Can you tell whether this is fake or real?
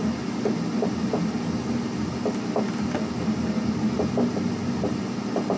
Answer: real